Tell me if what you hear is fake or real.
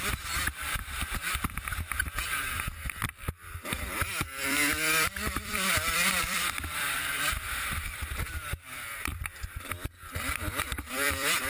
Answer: fake